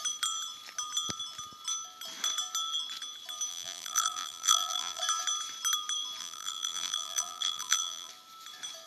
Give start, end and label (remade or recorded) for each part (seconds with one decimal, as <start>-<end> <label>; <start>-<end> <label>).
0.0-3.5 recorded; 3.5-5.0 remade; 5.0-6.2 recorded; 6.2-8.1 remade; 8.1-8.9 recorded